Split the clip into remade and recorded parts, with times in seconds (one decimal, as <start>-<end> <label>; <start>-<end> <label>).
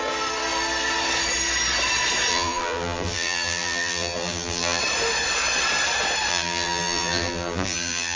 0.0-2.3 recorded; 2.3-4.8 remade; 4.8-6.3 recorded; 6.3-8.2 remade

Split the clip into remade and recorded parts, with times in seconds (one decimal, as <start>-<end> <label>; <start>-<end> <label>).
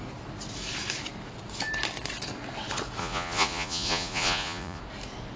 0.0-3.0 recorded; 3.0-4.8 remade; 4.8-5.4 recorded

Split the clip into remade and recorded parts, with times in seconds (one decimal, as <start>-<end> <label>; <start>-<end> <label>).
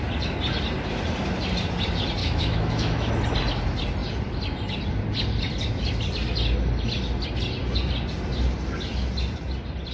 0.0-2.2 recorded; 2.2-3.1 remade; 3.1-9.9 recorded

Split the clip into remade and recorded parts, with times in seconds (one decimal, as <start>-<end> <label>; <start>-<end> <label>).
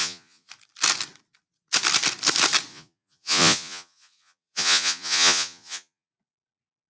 0.0-0.5 remade; 0.5-2.7 recorded; 2.7-6.1 remade; 6.1-6.9 recorded